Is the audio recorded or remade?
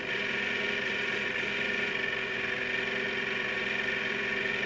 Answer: recorded